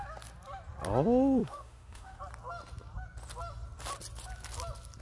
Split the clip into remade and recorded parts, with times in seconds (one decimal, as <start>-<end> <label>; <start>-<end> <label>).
0.0-1.4 recorded; 1.4-2.2 remade; 2.2-5.0 recorded